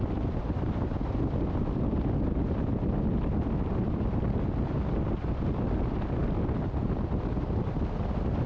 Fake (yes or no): no